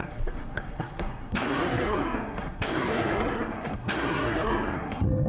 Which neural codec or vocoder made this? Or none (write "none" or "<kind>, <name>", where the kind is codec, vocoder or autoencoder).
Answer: codec, SNAC